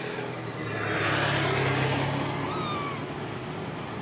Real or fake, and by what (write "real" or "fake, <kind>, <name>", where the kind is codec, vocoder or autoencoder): real